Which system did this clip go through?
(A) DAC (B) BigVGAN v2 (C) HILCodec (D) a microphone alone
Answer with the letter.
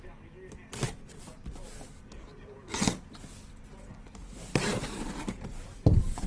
D